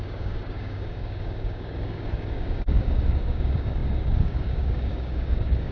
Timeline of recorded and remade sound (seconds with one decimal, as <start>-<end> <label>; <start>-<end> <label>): 0.0-5.7 remade